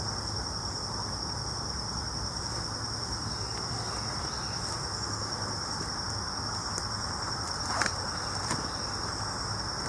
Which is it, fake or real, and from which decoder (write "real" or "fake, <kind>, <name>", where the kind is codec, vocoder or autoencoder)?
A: real